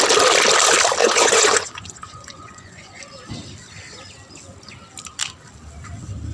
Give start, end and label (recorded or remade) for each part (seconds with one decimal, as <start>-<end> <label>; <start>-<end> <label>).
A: 0.0-1.0 recorded; 1.0-3.0 remade; 3.0-6.3 recorded